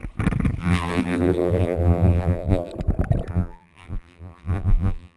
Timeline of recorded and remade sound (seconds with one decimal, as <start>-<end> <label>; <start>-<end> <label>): 0.0-0.6 recorded; 0.6-2.7 remade; 2.7-3.3 recorded; 3.3-5.2 remade